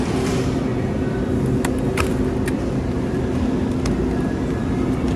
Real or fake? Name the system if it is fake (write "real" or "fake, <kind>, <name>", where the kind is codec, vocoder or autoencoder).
real